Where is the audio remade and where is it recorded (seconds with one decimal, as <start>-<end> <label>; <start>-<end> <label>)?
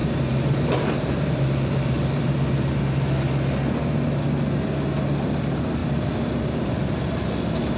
0.0-2.8 remade; 2.8-5.8 recorded; 5.8-7.0 remade; 7.0-7.8 recorded